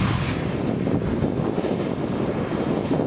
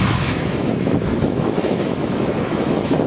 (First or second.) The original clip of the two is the first